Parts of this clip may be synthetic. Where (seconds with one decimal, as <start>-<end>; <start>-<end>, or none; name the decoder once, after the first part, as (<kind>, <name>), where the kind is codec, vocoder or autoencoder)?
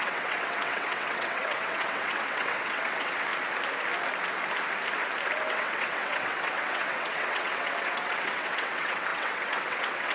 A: 0.0-3.3 (vocoder, WaveNeXt); 5.5-10.1